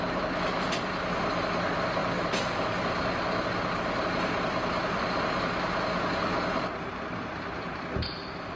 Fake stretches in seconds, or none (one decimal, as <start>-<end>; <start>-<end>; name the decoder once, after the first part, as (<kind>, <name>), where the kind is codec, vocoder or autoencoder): none